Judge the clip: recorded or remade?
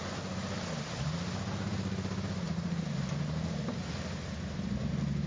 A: recorded